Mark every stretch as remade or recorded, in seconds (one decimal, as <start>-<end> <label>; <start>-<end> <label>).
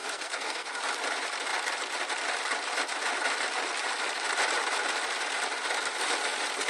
0.0-0.8 remade; 0.8-6.7 recorded